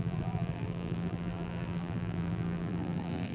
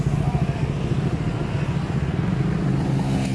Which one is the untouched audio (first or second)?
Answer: second